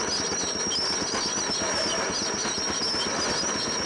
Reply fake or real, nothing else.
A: real